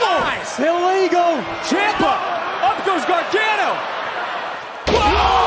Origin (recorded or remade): recorded